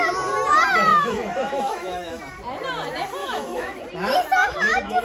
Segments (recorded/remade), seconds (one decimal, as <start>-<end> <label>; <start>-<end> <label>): 0.0-0.9 recorded; 0.9-2.2 remade; 2.2-3.2 recorded; 3.2-3.8 remade; 3.8-4.4 recorded; 4.4-5.0 remade